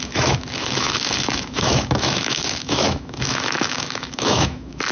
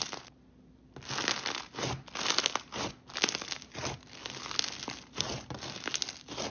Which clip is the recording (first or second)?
second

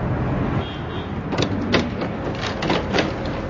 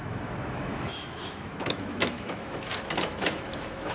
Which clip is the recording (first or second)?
first